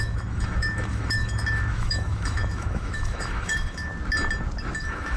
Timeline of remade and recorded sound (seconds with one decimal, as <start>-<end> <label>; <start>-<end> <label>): 0.0-3.9 remade; 3.9-4.8 recorded; 4.8-5.2 remade